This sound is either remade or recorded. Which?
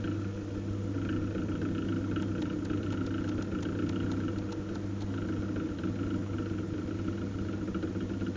recorded